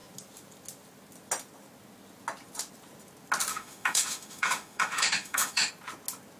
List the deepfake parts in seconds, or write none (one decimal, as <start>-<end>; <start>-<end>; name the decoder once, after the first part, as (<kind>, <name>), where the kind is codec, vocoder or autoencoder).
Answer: 3.5-5.7 (autoencoder, DAC-VAE)